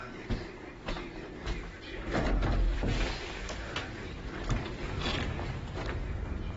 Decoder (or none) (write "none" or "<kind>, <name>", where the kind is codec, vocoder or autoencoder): vocoder, BigVGAN v2